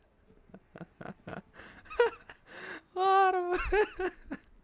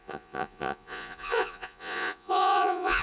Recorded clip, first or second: first